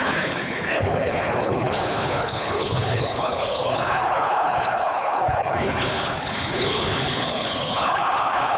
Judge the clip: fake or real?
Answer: fake